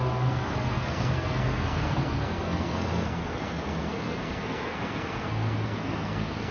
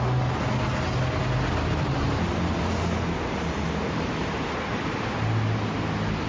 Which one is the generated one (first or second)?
first